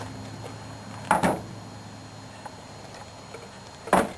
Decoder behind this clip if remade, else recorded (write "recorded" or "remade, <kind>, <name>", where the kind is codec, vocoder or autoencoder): recorded